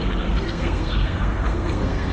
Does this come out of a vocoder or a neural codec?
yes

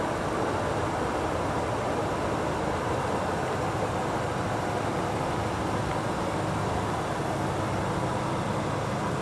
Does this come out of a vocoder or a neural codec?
no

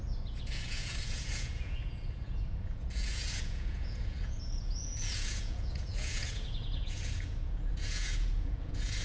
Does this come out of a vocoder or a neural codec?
yes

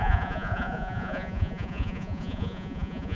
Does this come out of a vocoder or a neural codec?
yes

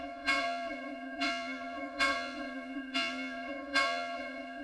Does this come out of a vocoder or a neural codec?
yes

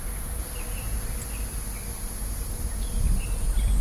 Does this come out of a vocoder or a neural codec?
no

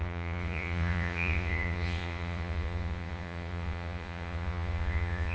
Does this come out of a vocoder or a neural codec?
yes